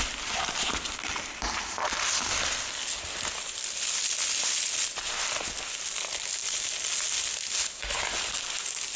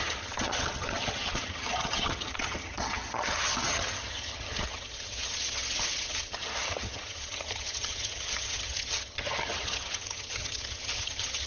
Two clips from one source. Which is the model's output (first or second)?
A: second